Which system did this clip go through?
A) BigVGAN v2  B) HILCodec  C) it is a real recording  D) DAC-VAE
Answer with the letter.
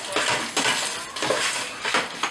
C